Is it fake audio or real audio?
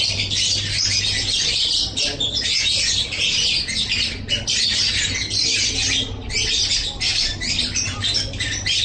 real